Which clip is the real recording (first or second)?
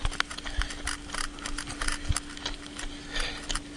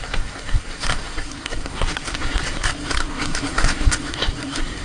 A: first